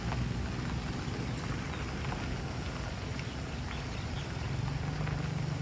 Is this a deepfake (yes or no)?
no